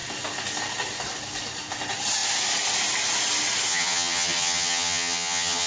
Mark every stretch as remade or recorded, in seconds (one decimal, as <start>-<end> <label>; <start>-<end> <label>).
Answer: 0.0-3.7 recorded; 3.7-5.7 remade